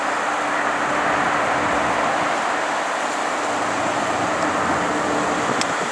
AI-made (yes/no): no